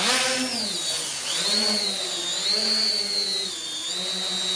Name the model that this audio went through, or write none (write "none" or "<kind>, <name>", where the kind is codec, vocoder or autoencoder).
none